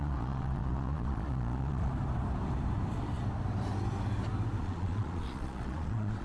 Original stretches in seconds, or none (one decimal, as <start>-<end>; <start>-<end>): 1.9-4.6